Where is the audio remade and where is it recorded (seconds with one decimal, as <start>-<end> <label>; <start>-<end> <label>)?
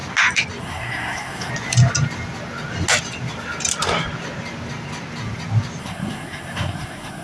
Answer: 0.0-0.6 recorded; 0.6-1.5 remade; 1.5-5.8 recorded; 5.8-7.2 remade